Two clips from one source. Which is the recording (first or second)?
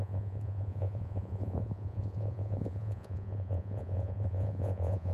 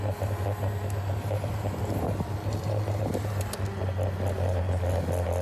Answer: second